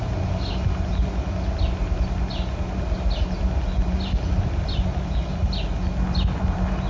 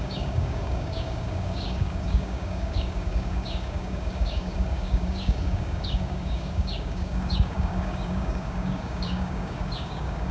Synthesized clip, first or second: second